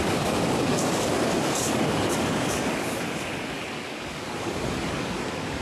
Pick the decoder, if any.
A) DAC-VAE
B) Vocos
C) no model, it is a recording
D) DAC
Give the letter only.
D